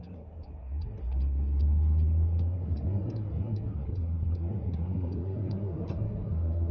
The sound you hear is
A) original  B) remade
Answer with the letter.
B